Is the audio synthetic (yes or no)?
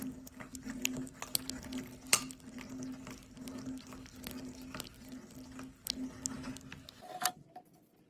no